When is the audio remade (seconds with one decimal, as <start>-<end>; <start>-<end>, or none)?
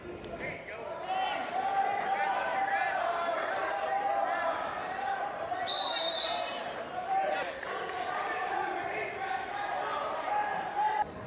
4.8-6.4; 9.9-11.3